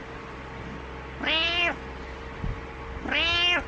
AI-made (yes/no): no